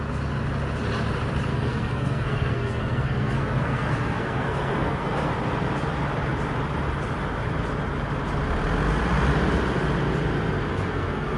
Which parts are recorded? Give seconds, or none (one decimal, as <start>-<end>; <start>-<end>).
0.0-1.5; 5.3-10.7